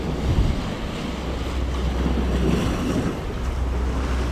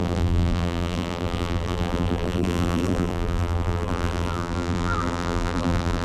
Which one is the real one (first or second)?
first